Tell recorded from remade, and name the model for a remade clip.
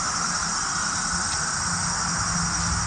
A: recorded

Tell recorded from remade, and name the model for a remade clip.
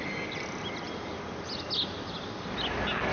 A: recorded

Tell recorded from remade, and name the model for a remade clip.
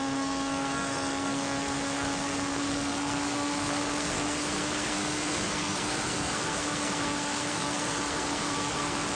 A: remade, codec, SNAC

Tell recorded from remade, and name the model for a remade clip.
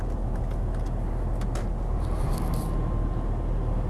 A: recorded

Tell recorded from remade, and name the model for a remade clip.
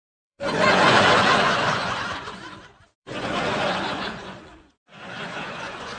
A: remade, vocoder, Vocos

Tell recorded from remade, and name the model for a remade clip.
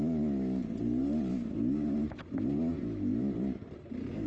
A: recorded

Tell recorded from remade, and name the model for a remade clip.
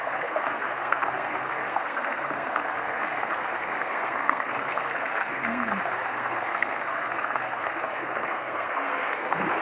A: remade, codec, SNAC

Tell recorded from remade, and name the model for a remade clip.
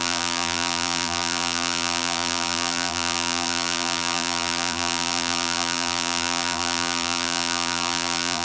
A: remade, vocoder, BigVGAN v2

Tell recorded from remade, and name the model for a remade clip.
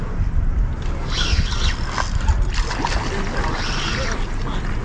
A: recorded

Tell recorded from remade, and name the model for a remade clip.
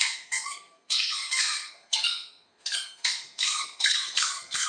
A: remade, codec, SNAC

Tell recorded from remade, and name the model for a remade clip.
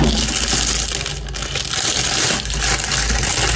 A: recorded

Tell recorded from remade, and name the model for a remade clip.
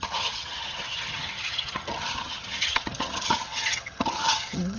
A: remade, vocoder, HiFi-GAN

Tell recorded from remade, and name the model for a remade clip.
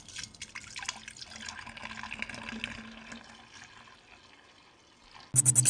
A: recorded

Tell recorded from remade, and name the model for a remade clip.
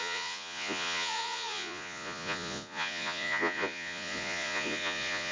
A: remade, vocoder, Vocos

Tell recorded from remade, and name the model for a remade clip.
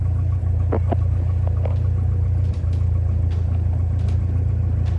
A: recorded